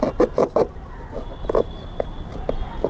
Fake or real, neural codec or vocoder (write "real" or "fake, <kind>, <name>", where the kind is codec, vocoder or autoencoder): real